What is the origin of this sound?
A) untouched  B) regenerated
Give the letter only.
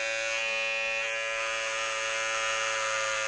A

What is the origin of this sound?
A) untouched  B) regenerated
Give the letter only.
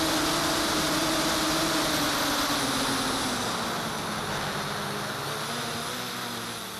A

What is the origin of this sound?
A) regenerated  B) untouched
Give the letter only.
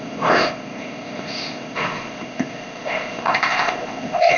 A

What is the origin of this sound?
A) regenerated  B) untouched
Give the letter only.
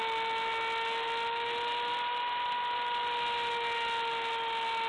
B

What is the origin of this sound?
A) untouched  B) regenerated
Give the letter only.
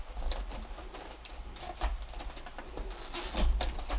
A